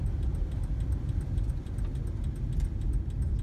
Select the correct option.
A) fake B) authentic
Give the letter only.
B